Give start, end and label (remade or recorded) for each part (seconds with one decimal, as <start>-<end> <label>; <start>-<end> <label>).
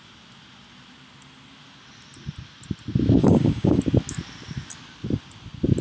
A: 0.0-3.2 recorded; 3.2-3.8 remade; 3.8-5.8 recorded